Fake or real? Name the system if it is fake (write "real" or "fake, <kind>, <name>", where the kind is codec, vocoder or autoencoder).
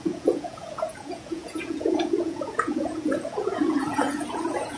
fake, vocoder, Vocos